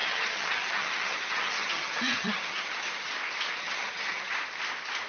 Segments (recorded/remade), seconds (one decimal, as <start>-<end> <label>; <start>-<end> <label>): 0.0-3.1 remade; 3.1-3.6 recorded; 3.6-4.3 remade; 4.3-5.1 recorded